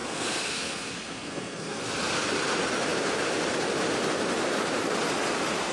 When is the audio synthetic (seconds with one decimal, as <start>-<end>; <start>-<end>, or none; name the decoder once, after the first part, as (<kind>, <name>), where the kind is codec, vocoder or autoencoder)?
0.0-1.8 (codec, SNAC)